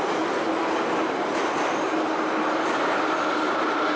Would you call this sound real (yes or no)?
yes